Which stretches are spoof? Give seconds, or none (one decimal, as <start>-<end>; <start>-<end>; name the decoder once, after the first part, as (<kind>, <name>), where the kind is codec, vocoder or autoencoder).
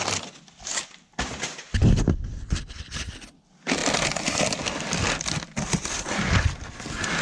none